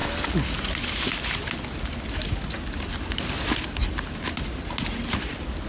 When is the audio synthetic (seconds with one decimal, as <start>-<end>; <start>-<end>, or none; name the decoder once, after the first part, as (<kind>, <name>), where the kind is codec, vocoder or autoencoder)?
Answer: none